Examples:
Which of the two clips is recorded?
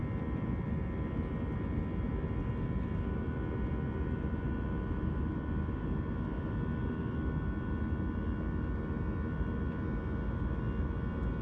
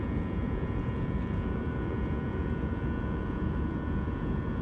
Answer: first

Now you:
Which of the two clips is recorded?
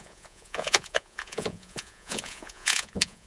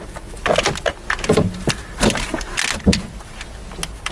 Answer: second